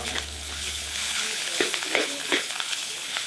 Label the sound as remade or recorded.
remade